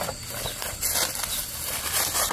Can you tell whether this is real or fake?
real